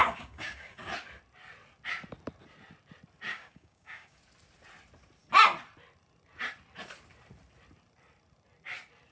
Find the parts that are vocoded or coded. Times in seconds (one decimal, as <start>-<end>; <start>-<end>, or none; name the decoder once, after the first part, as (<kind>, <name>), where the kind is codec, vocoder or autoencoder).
0.0-0.9 (codec, DAC); 3.3-4.2